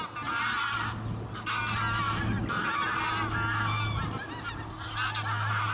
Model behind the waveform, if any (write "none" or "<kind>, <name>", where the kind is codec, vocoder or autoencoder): none